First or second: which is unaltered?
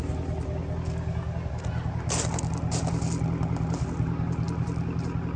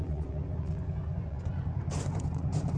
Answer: first